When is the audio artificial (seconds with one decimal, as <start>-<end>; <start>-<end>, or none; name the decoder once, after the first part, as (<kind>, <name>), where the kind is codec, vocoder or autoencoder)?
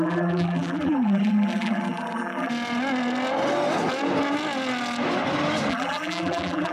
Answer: 0.0-2.5 (vocoder, BigVGAN v2); 5.7-6.7